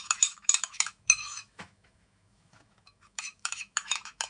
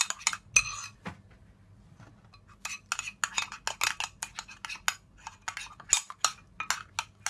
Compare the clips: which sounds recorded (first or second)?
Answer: second